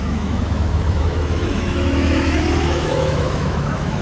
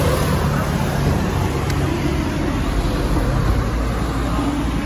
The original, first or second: second